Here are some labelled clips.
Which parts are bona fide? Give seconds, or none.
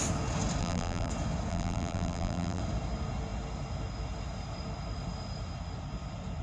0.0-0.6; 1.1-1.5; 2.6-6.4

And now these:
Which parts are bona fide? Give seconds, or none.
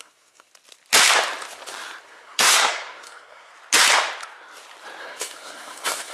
0.5-2.0; 3.5-5.0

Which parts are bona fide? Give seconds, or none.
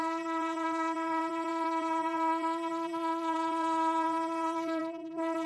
none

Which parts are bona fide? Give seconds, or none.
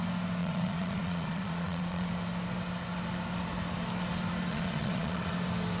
0.0-0.4; 2.1-4.5; 5.3-5.8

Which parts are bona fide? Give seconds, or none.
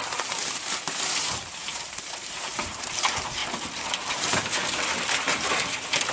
3.4-4.1; 4.6-6.1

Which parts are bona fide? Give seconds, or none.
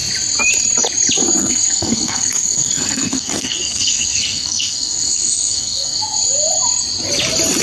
0.0-1.4; 6.0-7.6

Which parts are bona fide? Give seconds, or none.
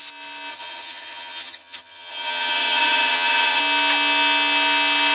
0.0-0.5; 3.6-5.1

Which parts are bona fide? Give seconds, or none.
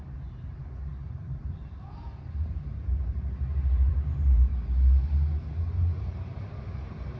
4.5-6.0